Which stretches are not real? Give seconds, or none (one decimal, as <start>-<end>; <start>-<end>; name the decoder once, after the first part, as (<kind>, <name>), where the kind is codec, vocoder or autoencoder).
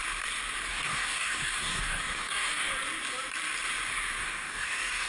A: 0.7-2.7 (codec, DAC); 4.2-5.1